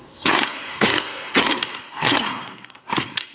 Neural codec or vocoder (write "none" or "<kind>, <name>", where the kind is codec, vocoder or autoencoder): codec, SNAC